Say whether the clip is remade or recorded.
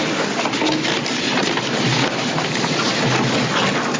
recorded